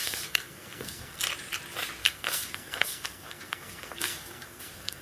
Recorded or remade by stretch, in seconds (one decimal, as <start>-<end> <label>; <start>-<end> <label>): 0.0-1.2 remade; 1.2-2.0 recorded; 2.0-5.0 remade